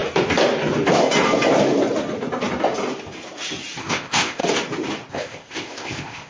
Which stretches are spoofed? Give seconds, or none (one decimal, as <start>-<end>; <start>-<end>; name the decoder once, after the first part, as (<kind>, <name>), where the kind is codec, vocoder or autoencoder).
3.8-4.4 (codec, ZipCodec); 5.1-6.3